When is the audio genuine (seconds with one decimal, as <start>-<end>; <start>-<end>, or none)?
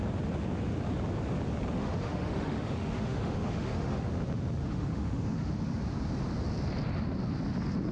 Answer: 0.0-1.8; 4.1-4.6; 5.8-7.9